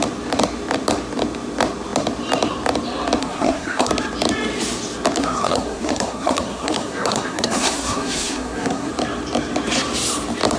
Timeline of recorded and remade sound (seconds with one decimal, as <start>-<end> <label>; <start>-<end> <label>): 0.0-3.2 recorded; 3.2-3.9 remade; 3.9-5.2 recorded; 5.2-8.9 remade; 8.9-10.6 recorded